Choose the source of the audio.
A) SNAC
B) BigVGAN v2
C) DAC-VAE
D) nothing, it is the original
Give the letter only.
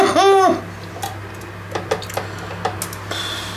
D